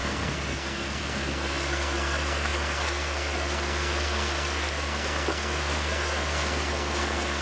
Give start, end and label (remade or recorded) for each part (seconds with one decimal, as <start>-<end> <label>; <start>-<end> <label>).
0.0-7.4 remade